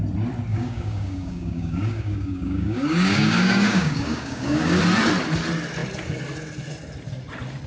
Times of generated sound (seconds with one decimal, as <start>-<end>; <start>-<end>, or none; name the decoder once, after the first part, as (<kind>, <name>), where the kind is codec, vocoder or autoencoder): 0.5-4.8 (codec, DAC)